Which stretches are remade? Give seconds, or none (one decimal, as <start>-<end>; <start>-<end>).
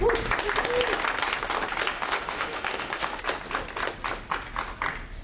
1.9-3.2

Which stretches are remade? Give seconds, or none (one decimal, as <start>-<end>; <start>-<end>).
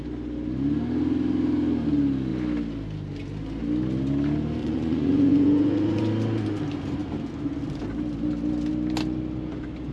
4.6-6.0